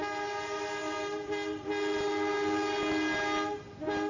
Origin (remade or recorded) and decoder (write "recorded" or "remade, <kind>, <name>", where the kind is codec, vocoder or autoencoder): recorded